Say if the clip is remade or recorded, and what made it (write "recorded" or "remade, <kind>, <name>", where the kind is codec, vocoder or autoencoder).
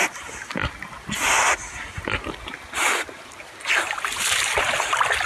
recorded